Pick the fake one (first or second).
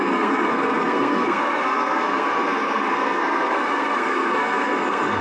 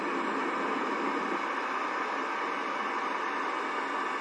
first